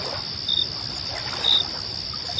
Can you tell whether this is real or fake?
real